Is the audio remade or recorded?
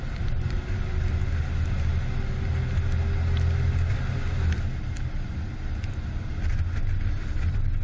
recorded